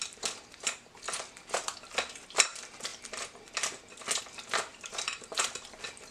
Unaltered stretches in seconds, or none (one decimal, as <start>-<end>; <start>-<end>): 0.0-4.7; 5.2-6.1